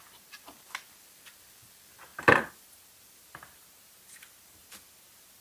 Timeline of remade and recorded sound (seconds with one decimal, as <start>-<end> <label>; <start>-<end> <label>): 0.0-5.4 recorded

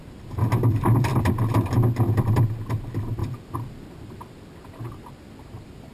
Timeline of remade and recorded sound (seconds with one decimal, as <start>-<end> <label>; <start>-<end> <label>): 0.0-1.1 remade; 1.1-2.7 recorded; 2.7-3.2 remade; 3.2-5.4 recorded; 5.4-5.9 remade